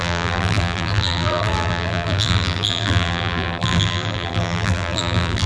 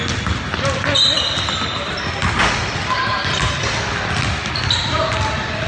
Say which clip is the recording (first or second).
second